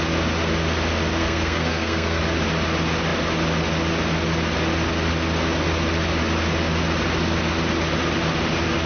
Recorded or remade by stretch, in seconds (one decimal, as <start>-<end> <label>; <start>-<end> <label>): 0.0-1.2 recorded; 1.2-2.2 remade; 2.2-8.9 recorded